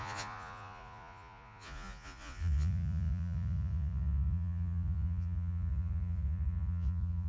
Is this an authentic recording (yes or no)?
no